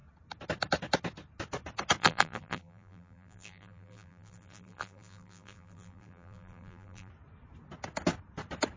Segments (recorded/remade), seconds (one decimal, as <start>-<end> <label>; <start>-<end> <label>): 0.0-2.0 recorded; 2.0-7.1 remade; 7.1-8.8 recorded